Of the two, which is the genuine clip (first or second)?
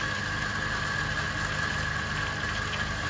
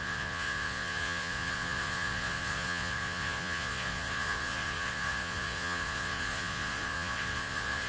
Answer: first